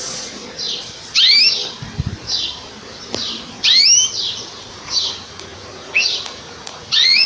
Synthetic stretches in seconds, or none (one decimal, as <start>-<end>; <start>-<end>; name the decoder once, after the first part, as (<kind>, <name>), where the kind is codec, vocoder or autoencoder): 0.0-0.4 (vocoder, Vocos); 4.8-7.3